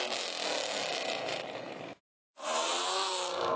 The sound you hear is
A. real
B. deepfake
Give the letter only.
A